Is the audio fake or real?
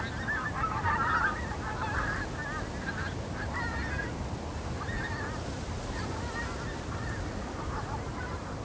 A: real